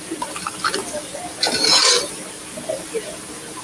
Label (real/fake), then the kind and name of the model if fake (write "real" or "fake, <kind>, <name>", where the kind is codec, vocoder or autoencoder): real